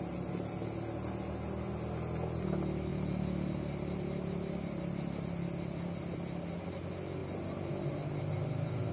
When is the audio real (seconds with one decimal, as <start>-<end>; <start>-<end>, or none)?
0.0-8.9